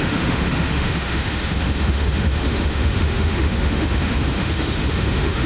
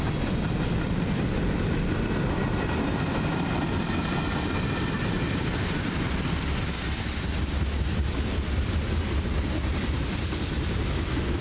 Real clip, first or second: second